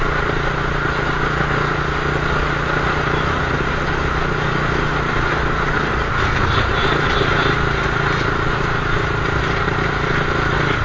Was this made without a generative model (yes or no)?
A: yes